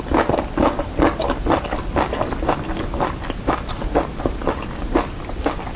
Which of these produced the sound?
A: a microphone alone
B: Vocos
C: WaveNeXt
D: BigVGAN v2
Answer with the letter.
A